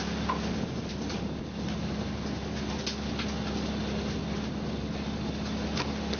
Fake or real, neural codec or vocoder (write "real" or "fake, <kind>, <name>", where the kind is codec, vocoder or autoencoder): real